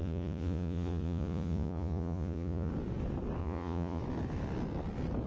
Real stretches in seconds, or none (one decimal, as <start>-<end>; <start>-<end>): 2.7-3.4; 4.0-5.3